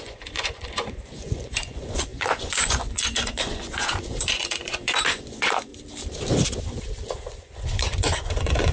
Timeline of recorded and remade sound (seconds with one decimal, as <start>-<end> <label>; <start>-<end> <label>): 0.0-5.7 remade; 5.7-7.3 recorded; 7.3-8.7 remade